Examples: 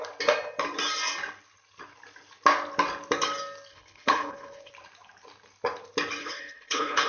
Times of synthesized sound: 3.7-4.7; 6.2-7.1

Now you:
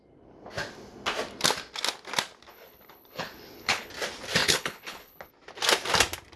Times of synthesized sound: 2.5-3.9; 4.4-5.3

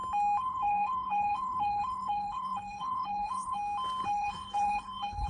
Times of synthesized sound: 0.4-3.6; 4.0-5.3

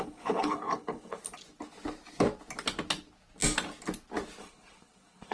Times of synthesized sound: 0.0-1.2; 4.4-5.3

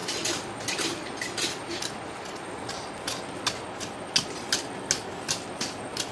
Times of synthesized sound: none

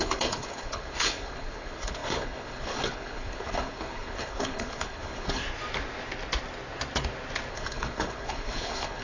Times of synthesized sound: 0.0-5.4; 7.5-9.0